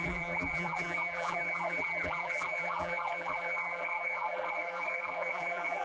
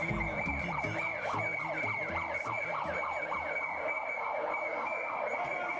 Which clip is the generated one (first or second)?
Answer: first